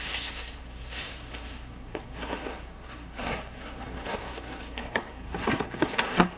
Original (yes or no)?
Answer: no